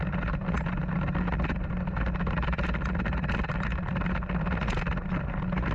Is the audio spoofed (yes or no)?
no